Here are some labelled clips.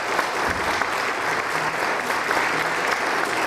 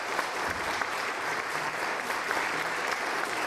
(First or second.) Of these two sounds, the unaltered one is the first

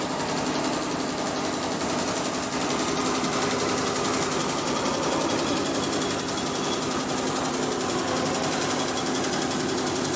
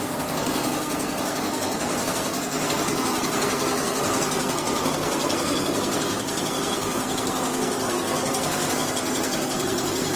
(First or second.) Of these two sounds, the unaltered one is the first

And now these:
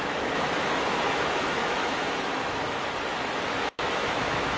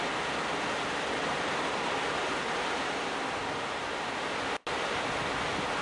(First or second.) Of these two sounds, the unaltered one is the second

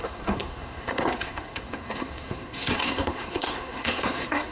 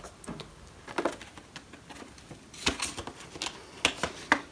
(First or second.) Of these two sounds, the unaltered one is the second